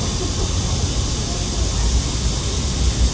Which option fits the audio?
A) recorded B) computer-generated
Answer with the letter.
A